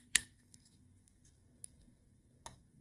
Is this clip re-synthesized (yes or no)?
yes